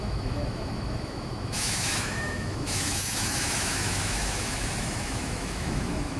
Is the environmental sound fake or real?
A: fake